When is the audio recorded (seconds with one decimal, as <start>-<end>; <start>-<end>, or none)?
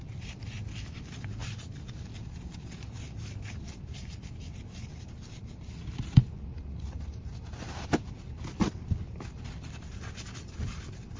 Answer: 0.0-1.4; 4.6-11.2